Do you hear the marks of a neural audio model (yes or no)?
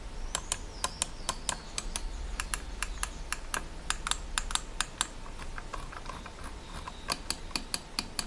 no